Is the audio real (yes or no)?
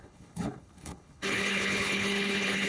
no